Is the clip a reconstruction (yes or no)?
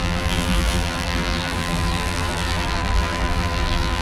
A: yes